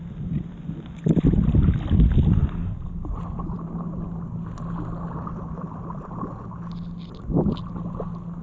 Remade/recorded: recorded